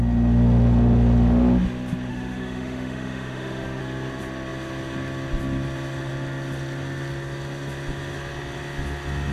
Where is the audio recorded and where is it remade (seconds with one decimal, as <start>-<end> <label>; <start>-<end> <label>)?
0.0-2.1 recorded; 2.1-3.8 remade; 3.8-9.3 recorded